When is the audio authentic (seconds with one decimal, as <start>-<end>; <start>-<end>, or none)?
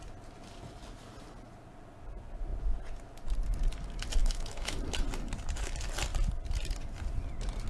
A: 0.0-4.2; 4.8-7.7